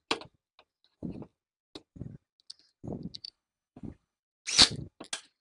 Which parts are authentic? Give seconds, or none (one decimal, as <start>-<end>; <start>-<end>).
0.0-3.2; 4.2-5.4